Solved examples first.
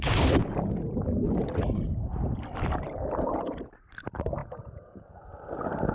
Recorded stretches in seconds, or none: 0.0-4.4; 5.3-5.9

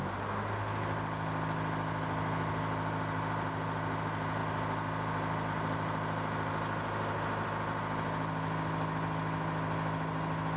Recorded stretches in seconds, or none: 0.0-10.6

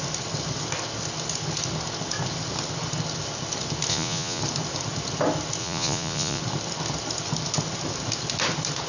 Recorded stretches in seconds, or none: 0.0-3.9; 4.4-5.6; 6.4-8.9

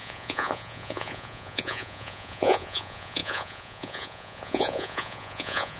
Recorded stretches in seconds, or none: none

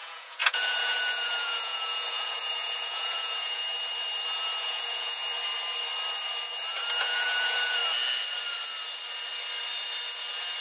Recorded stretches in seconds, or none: 3.6-4.6; 5.2-7.0; 7.8-10.6

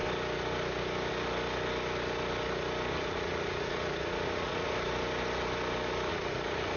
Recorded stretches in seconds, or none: 0.0-2.9; 4.7-6.1

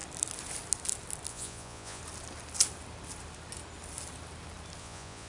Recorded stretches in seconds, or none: 0.0-1.3; 2.0-4.8

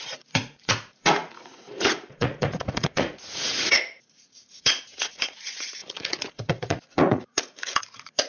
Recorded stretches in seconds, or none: none